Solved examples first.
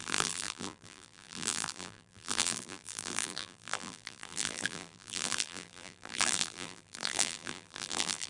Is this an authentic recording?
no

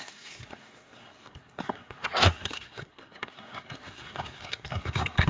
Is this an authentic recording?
no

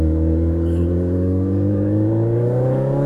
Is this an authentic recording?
no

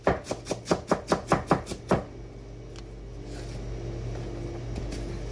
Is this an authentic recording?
yes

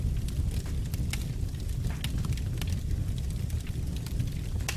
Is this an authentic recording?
yes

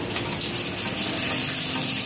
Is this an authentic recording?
yes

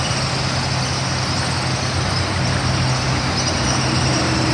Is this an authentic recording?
yes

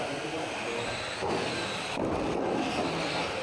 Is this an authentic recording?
yes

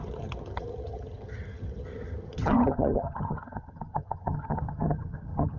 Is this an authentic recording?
no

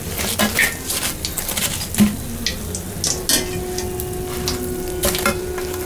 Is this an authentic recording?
yes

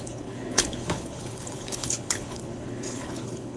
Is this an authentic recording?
no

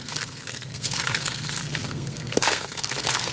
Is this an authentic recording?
no